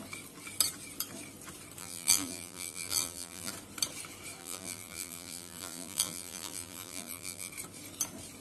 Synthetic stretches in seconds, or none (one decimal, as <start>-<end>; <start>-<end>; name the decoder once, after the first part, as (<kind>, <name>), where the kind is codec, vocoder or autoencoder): 1.8-3.5 (vocoder, BigVGAN v2); 4.4-7.5